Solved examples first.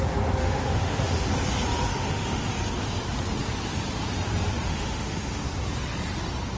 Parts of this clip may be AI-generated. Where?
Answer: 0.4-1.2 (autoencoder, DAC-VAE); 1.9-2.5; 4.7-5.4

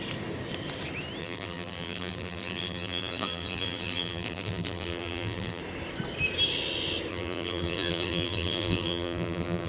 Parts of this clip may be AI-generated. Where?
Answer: 1.2-5.6 (vocoder, BigVGAN v2); 7.1-9.7

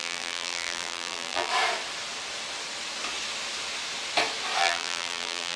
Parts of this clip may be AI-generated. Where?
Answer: 0.0-1.5 (vocoder, BigVGAN v2); 4.6-5.6

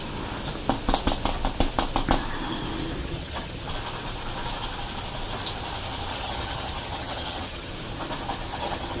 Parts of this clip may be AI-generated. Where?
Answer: 3.0-3.7 (vocoder, HiFi-GAN); 6.1-7.7; 8.5-9.0

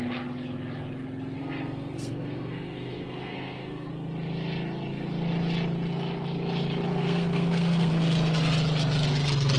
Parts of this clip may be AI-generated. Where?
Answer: 1.4-3.9 (codec, SNAC); 6.9-7.9

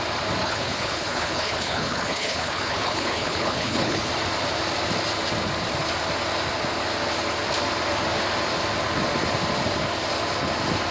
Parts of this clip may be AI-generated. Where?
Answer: 0.4-4.1 (codec, HILCodec)